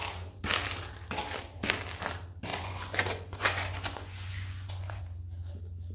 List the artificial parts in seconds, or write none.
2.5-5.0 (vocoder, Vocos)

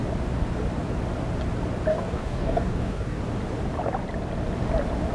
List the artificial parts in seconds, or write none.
1.9-3.2 (codec, DAC)